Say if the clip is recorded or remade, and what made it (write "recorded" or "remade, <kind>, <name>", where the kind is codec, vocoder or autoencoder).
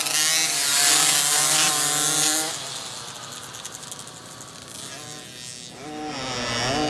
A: recorded